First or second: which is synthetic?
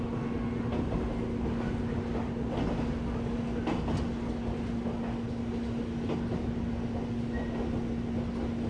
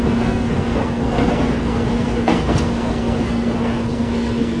second